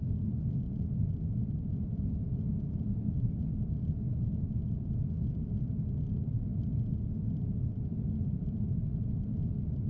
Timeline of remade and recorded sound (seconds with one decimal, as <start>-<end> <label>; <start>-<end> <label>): 0.0-9.9 recorded